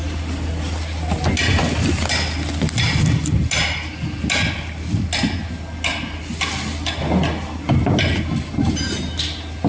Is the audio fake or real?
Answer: real